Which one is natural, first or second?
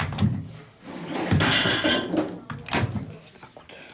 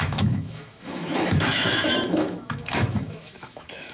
first